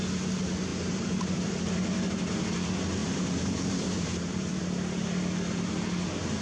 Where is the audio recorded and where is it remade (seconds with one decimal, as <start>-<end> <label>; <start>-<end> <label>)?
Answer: 0.0-0.7 recorded; 0.7-1.5 remade; 1.5-3.0 recorded; 3.0-4.6 remade; 4.6-6.4 recorded